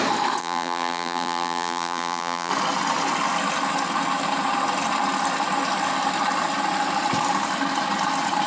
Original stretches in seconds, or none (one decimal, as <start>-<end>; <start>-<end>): 0.0-0.4; 2.5-8.5